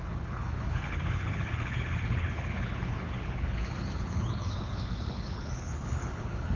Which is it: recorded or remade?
remade